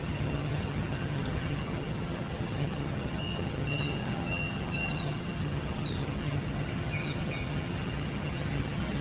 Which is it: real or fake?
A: fake